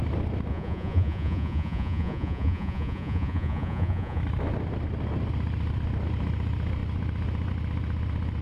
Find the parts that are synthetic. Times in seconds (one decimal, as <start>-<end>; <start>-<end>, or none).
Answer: 0.5-4.2